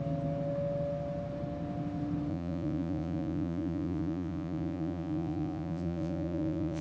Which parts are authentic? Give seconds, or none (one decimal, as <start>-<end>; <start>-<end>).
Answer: 0.0-2.3